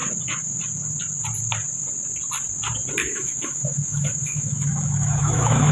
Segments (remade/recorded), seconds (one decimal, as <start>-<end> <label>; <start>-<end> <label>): 0.0-3.0 recorded; 3.0-5.7 remade